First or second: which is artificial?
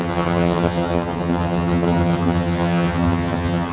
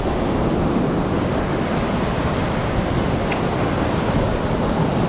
first